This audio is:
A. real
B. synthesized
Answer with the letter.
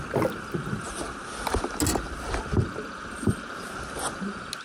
A